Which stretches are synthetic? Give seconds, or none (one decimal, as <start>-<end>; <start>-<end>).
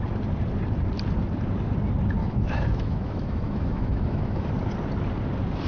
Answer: 2.2-4.5